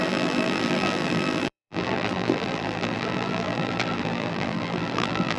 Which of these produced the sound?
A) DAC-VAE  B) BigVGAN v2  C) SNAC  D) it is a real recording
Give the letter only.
B